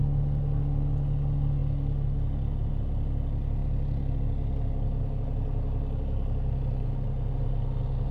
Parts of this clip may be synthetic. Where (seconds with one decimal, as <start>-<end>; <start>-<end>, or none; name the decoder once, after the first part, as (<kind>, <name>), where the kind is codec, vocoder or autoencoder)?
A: none